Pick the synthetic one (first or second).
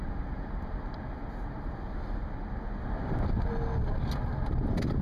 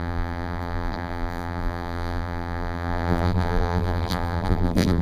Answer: second